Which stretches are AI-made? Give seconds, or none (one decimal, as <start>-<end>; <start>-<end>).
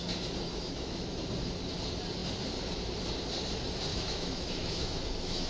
0.5-1.2; 3.9-5.5